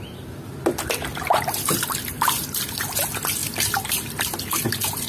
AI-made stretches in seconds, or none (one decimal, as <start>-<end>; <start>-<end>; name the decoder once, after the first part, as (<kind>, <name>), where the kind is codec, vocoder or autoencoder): none